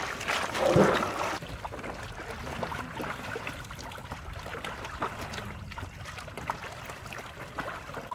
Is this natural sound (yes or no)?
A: yes